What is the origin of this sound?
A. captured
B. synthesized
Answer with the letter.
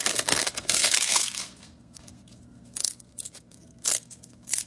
B